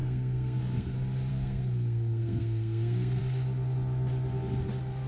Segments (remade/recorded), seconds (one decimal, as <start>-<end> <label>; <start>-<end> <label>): 0.0-0.9 remade; 0.9-1.3 recorded; 1.3-3.2 remade; 3.2-5.1 recorded